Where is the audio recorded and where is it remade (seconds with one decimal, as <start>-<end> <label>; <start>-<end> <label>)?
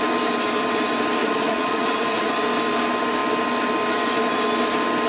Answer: 0.0-1.2 recorded; 1.2-2.3 remade; 2.3-5.1 recorded